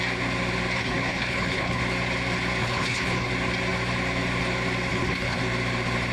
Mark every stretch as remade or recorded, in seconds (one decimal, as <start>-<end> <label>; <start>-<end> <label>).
0.0-0.8 recorded; 0.8-1.8 remade; 1.8-2.6 recorded; 2.6-3.3 remade; 3.3-4.9 recorded; 4.9-5.4 remade; 5.4-6.1 recorded